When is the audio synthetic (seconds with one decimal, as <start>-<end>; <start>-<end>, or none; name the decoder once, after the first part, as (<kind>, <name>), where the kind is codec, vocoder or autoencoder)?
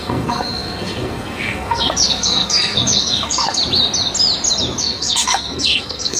0.0-3.6 (codec, SNAC); 4.8-6.2